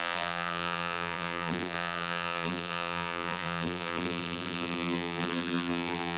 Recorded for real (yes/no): no